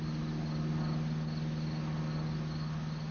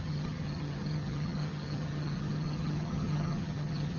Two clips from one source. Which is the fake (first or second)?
second